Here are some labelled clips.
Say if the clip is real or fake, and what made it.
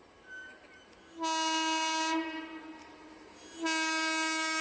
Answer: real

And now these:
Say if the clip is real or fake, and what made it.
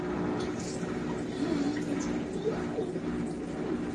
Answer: real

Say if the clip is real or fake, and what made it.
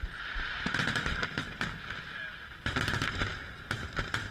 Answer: real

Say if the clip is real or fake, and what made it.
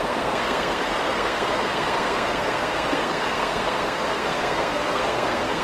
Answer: fake, codec, SNAC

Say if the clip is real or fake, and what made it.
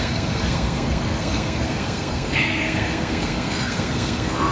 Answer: fake, codec, SNAC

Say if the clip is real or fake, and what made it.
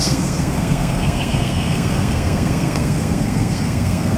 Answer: fake, codec, SNAC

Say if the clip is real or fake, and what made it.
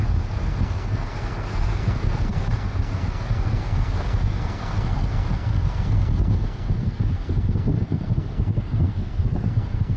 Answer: fake, codec, SNAC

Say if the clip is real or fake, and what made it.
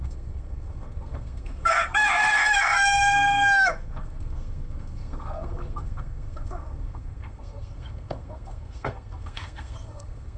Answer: fake, codec, SNAC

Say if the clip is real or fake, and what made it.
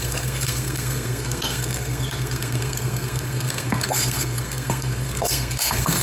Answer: fake, codec, SNAC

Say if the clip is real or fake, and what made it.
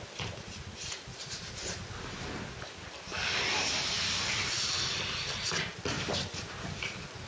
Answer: real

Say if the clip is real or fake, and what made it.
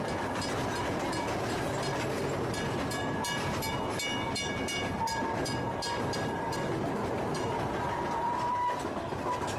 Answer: real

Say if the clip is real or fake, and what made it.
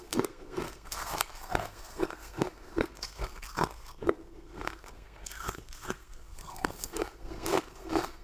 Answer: fake, codec, SNAC